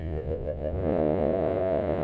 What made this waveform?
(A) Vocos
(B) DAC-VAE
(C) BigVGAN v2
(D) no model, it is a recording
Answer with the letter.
A